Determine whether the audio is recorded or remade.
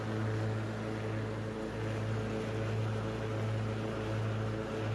recorded